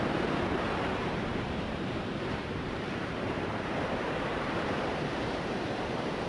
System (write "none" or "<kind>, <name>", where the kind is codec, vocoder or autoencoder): vocoder, BigVGAN v2